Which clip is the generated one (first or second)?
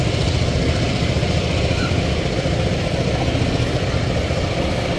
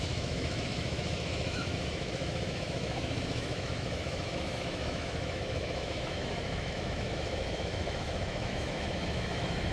second